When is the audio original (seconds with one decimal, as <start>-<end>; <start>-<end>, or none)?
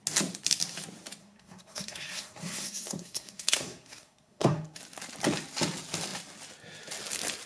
0.0-1.2; 4.8-7.5